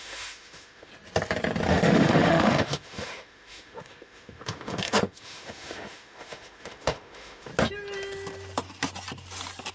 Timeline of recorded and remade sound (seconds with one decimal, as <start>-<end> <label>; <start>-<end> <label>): 0.0-0.9 remade; 0.9-1.7 recorded; 1.7-7.5 remade; 7.5-9.7 recorded